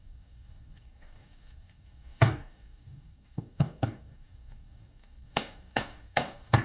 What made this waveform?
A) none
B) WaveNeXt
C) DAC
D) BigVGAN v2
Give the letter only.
C